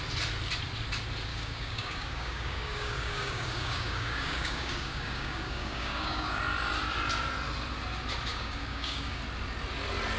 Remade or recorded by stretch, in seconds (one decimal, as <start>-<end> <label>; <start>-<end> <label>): 0.0-1.3 recorded; 1.3-6.4 remade; 6.4-8.3 recorded; 8.3-9.2 remade; 9.2-10.2 recorded